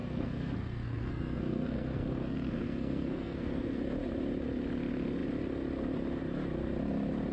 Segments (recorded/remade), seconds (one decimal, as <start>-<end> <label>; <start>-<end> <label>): 0.0-3.8 remade; 3.8-7.3 recorded